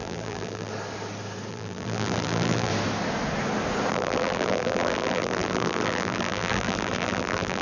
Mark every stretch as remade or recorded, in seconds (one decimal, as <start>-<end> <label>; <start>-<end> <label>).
0.0-0.7 remade; 0.7-1.5 recorded; 1.5-2.7 remade; 2.7-3.9 recorded; 3.9-7.6 remade